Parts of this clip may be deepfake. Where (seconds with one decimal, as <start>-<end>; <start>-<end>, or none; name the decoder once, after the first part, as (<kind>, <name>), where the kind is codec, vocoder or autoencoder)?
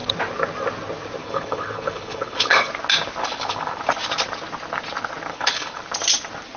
1.2-2.7 (codec, HILCodec); 3.2-3.8; 5.3-5.8